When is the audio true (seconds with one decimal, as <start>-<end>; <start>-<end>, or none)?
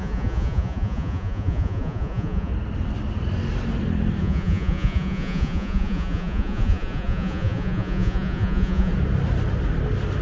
2.5-4.2; 8.9-10.2